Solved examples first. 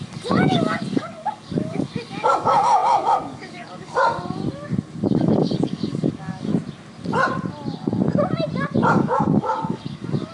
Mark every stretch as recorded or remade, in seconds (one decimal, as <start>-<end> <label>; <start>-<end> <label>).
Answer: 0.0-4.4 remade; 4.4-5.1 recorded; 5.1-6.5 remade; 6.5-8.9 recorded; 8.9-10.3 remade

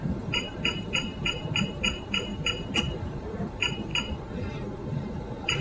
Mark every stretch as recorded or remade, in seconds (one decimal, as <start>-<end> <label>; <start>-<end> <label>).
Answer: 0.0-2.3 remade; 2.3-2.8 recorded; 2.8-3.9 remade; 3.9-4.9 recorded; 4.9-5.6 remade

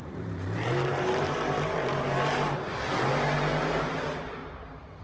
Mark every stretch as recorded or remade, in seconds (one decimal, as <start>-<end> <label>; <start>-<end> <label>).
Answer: 0.0-2.7 remade; 2.7-3.6 recorded; 3.6-4.4 remade; 4.4-5.0 recorded

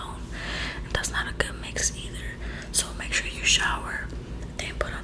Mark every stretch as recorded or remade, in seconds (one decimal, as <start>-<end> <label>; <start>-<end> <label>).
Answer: 0.0-5.0 recorded